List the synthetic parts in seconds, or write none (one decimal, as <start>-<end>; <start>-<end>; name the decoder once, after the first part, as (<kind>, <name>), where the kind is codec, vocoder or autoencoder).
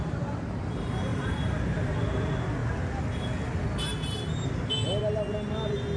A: 1.1-1.9 (vocoder, BigVGAN v2)